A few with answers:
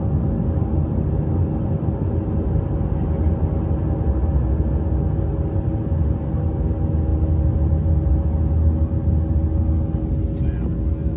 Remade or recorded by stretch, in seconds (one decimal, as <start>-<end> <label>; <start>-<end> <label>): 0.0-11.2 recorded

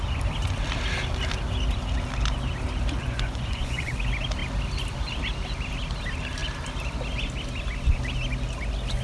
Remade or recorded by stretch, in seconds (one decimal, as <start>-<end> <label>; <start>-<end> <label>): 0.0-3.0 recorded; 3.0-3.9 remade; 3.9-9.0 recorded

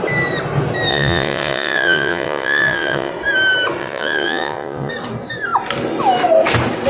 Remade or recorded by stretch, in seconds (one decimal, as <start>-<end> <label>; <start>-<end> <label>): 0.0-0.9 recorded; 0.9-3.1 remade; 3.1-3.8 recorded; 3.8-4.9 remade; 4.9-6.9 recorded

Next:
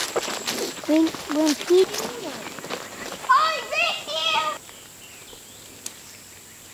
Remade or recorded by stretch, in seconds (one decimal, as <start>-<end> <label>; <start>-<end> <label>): 0.0-6.7 recorded

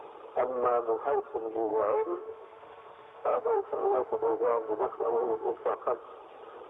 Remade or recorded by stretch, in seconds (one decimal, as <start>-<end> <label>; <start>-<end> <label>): 0.0-1.7 recorded; 1.7-5.7 remade; 5.7-6.7 recorded

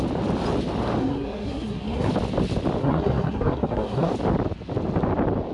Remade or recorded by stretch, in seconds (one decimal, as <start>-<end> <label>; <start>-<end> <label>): 0.0-1.0 recorded; 1.0-2.1 remade; 2.1-2.8 recorded; 2.8-4.1 remade; 4.1-5.5 recorded

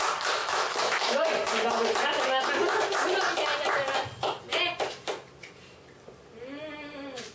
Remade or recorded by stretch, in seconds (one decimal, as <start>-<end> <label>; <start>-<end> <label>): 0.0-0.4 recorded; 0.4-1.3 remade; 1.3-7.3 recorded

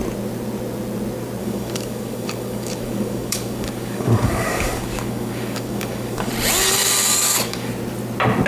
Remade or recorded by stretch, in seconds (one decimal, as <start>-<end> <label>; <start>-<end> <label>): 0.0-1.4 recorded; 1.4-6.3 remade; 6.3-7.1 recorded; 7.1-7.7 remade; 7.7-8.5 recorded